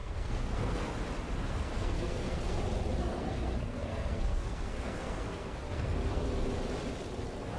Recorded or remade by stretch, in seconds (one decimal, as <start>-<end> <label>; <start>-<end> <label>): 0.0-0.9 remade; 0.9-1.4 recorded; 1.4-2.6 remade; 2.6-3.0 recorded; 3.0-6.3 remade; 6.3-7.6 recorded